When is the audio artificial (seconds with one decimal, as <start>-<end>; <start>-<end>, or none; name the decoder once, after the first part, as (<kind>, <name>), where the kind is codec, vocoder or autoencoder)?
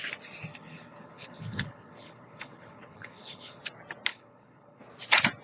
0.5-3.6 (codec, HILCodec); 4.1-4.8